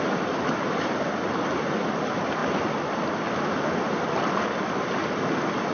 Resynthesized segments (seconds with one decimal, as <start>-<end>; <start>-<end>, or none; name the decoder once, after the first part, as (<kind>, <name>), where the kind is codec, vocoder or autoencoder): none